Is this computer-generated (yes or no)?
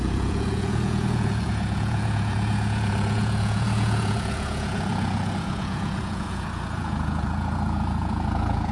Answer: yes